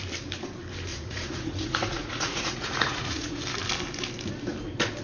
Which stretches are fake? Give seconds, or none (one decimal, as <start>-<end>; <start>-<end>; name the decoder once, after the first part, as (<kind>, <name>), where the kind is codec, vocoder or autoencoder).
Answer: 0.9-3.4 (vocoder, Vocos)